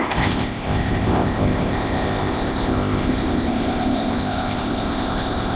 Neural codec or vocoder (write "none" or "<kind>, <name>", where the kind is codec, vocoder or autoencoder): codec, ZipCodec